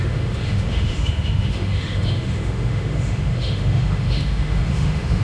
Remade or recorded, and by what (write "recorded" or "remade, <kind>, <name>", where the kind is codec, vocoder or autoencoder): remade, autoencoder, DAC-VAE